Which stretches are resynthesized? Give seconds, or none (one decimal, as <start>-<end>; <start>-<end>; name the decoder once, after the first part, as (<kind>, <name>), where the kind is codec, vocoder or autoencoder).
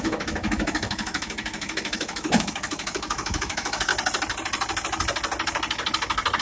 0.0-3.9 (autoencoder, DAC-VAE)